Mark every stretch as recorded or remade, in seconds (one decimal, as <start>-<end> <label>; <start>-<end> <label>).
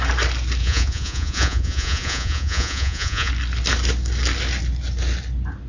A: 0.0-0.6 recorded; 0.6-3.3 remade; 3.3-5.7 recorded